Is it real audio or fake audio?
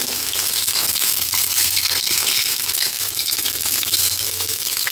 fake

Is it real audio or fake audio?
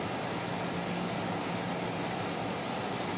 real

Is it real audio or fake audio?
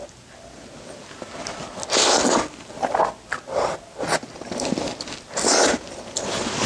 real